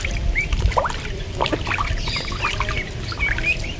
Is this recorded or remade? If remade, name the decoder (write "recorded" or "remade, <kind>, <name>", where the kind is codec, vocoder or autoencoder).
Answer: remade, vocoder, BigVGAN v2